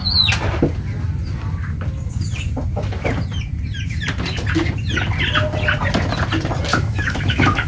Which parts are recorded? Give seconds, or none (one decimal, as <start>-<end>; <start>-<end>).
0.0-6.7